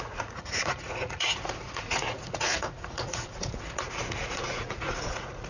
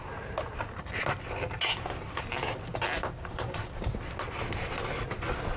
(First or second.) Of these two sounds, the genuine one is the second